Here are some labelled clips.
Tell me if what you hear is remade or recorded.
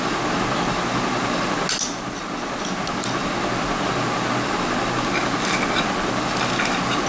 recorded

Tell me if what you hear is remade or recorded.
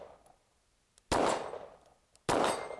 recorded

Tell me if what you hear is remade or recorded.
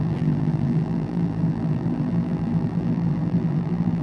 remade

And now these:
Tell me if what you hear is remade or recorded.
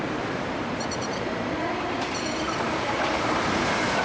remade